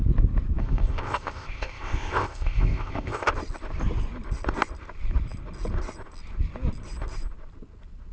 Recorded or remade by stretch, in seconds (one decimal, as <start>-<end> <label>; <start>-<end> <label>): 0.0-0.6 recorded; 0.6-3.3 remade; 3.3-8.1 recorded